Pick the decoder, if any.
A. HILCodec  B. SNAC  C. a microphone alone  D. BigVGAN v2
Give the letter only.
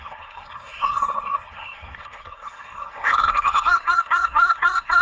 B